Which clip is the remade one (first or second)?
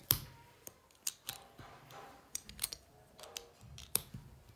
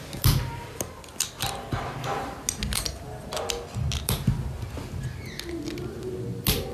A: first